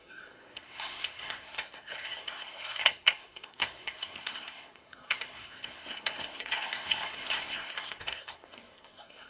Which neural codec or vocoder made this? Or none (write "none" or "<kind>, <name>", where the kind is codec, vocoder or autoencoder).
codec, SNAC